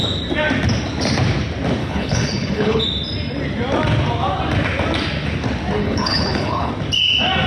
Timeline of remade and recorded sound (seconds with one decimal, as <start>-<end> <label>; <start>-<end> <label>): 0.0-1.8 recorded; 1.8-2.8 remade; 2.8-5.8 recorded; 5.8-6.7 remade; 6.7-7.5 recorded